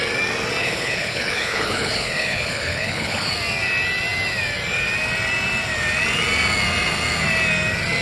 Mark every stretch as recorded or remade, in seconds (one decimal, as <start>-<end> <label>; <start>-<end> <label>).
0.0-0.6 recorded; 0.6-3.3 remade; 3.3-8.0 recorded